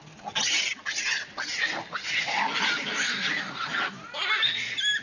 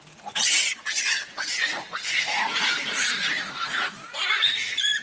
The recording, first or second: first